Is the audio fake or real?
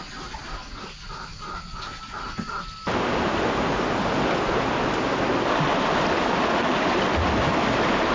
real